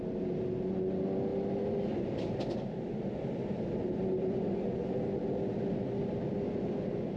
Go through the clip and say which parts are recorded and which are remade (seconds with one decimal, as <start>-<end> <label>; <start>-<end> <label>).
0.0-7.2 recorded